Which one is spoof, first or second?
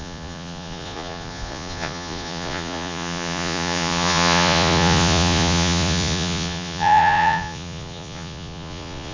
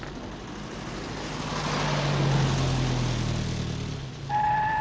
first